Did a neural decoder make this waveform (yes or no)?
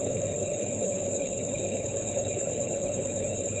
yes